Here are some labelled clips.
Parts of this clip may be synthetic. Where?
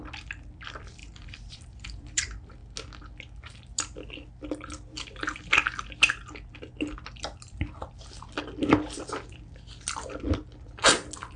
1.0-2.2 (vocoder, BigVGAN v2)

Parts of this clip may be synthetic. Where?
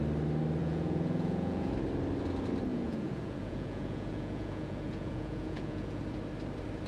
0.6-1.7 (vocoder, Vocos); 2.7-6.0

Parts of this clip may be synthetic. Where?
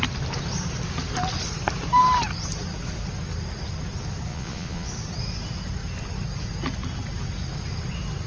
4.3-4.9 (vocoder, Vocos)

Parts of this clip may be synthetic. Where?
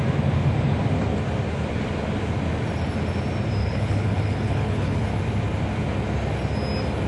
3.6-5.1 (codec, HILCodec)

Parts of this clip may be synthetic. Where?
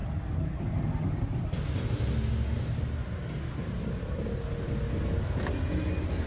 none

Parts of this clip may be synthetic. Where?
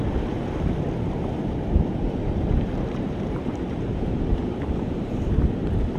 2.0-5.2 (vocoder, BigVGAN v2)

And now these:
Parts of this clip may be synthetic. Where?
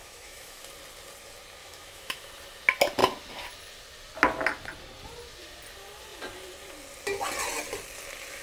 0.0-0.6 (autoencoder, DAC-VAE); 1.6-2.3